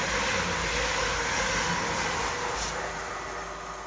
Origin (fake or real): real